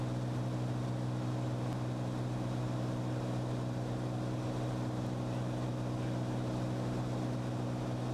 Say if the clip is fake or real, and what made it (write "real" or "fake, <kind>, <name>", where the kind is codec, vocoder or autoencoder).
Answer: real